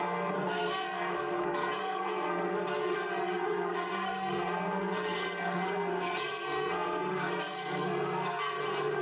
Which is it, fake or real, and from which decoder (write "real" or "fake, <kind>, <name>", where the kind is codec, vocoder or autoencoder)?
fake, codec, SNAC